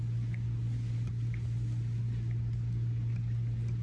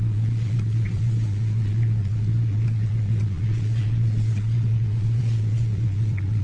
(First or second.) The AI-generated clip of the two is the second